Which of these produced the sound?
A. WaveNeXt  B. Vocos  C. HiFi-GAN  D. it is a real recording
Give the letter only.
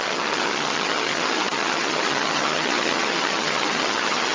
C